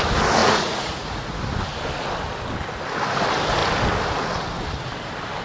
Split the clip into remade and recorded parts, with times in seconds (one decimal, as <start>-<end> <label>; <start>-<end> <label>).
0.0-0.4 recorded; 0.4-1.4 remade; 1.4-5.4 recorded